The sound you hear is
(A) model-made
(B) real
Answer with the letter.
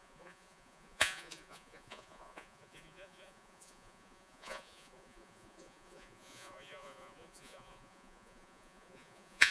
A